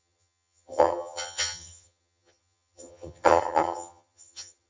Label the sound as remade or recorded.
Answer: remade